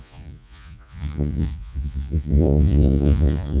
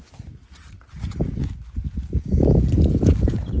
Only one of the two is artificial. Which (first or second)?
first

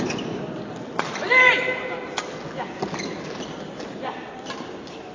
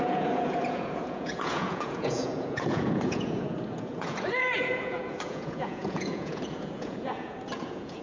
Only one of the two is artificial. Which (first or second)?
second